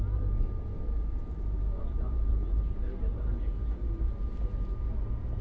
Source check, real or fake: fake